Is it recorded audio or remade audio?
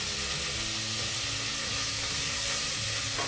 recorded